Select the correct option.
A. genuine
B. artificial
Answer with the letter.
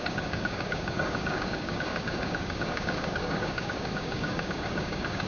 B